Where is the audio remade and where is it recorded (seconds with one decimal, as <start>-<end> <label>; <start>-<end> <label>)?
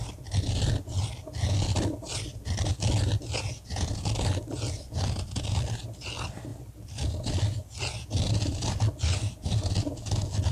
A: 0.0-10.5 recorded